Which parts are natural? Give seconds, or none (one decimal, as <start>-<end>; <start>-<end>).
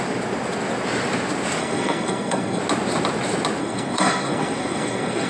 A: 0.0-1.6; 2.6-3.6